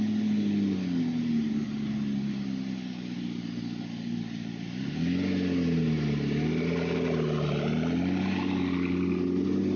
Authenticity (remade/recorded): recorded